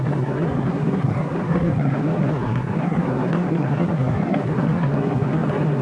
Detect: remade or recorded remade